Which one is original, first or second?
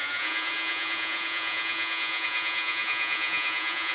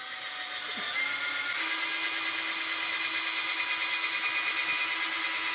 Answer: second